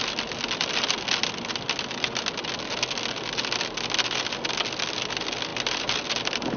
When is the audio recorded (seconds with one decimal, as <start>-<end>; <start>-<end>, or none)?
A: 0.0-6.6